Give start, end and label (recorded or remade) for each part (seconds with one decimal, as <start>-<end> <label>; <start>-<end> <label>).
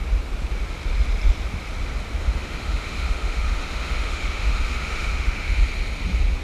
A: 0.0-2.2 recorded; 2.2-5.6 remade; 5.6-6.4 recorded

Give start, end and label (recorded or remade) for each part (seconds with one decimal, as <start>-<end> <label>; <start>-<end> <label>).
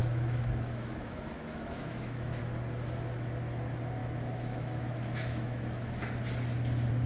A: 0.0-2.4 remade; 2.4-4.0 recorded; 4.0-6.0 remade; 6.0-7.1 recorded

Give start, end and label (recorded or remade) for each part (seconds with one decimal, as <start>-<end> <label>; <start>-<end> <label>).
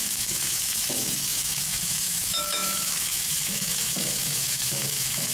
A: 0.0-5.3 remade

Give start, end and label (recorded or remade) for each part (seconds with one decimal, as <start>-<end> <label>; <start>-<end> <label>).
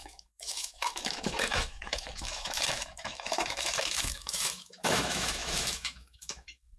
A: 0.0-6.8 remade